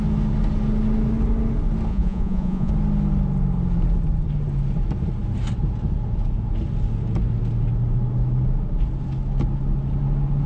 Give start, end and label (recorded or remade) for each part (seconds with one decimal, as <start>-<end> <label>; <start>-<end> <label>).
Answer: 0.0-1.9 recorded; 1.9-2.7 remade; 2.7-10.5 recorded